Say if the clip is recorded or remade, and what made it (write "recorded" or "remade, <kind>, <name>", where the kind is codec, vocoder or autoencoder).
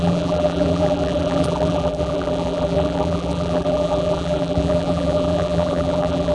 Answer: remade, vocoder, BigVGAN v2